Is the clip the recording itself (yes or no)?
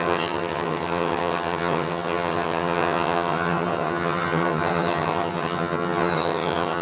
no